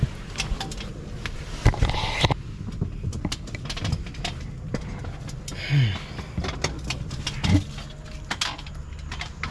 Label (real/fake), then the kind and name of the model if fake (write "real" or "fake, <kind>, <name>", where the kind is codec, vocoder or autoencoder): real